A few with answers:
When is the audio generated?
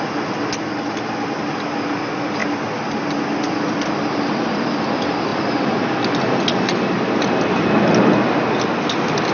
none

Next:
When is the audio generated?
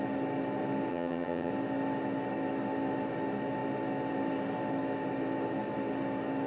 0.9-1.5 (vocoder, HiFi-GAN)